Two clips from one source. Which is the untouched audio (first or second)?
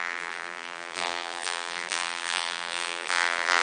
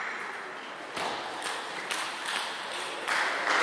second